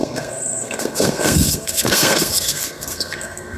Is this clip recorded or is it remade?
remade